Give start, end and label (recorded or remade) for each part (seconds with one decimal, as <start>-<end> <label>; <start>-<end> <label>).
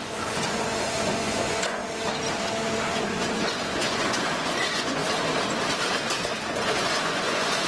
0.0-1.8 remade; 1.8-2.9 recorded; 2.9-5.0 remade; 5.0-6.5 recorded; 6.5-7.7 remade